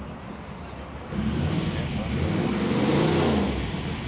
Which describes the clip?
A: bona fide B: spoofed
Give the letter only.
A